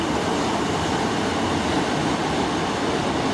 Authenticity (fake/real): real